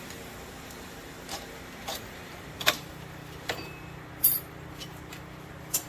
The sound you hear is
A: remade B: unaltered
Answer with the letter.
A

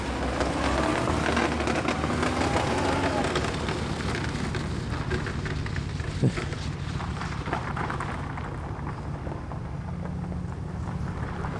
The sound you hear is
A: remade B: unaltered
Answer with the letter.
B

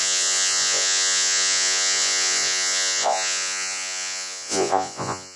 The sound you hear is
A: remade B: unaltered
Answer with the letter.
A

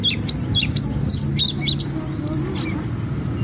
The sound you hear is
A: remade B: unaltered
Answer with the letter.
B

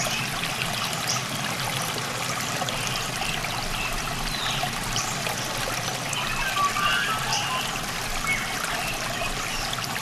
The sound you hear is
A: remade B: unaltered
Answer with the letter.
B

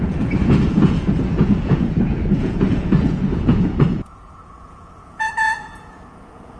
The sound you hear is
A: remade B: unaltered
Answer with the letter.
A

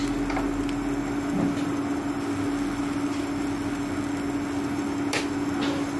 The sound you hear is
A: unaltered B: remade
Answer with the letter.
A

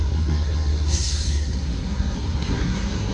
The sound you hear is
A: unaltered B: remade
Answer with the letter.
B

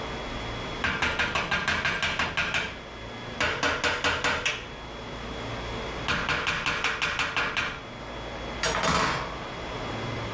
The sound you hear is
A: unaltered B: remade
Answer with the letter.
A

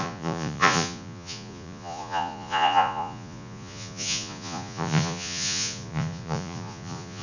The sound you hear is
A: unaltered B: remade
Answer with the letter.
B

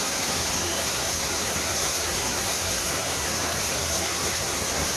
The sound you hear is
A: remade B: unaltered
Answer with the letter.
A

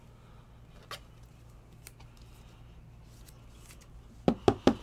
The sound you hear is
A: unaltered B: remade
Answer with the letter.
A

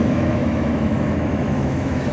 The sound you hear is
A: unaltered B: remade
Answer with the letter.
B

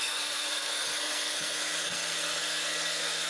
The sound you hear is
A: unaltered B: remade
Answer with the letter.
B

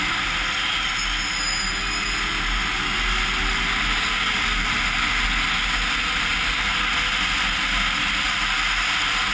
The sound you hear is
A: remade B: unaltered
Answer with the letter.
B